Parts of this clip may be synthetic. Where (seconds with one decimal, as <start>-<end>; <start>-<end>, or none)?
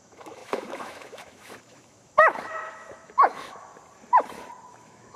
0.0-3.7; 4.7-5.2